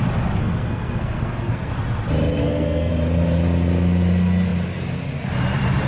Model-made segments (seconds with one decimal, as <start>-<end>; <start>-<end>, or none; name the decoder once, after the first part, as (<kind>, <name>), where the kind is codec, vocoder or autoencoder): 0.4-1.7 (codec, SNAC); 2.4-2.9